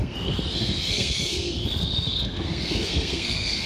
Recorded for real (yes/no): no